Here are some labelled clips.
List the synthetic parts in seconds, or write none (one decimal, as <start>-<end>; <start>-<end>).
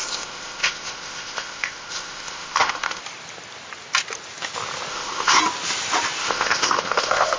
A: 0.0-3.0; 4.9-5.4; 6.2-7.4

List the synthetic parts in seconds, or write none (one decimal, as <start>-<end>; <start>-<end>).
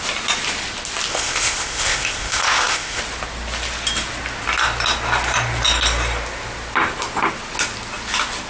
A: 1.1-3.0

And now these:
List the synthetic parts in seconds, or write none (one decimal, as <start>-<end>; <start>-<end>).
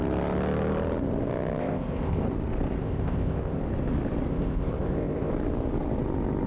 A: 1.6-2.2; 2.8-3.6; 4.3-5.3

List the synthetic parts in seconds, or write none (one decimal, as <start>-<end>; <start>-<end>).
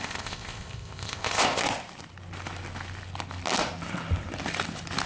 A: 0.0-1.6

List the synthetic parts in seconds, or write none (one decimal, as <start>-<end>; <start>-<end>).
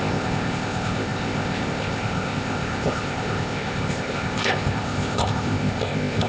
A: 0.0-6.3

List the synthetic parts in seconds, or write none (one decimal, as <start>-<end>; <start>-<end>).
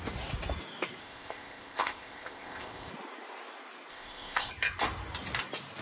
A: 1.0-2.9; 3.9-4.5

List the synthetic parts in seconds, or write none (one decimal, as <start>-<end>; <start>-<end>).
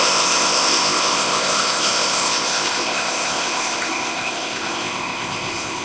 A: 0.0-5.8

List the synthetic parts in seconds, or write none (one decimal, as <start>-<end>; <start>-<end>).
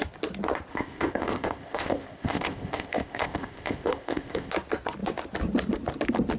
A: 0.7-4.5